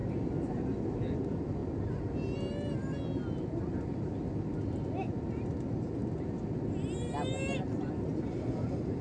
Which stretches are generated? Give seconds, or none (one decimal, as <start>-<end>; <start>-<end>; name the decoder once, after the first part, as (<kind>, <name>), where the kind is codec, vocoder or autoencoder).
none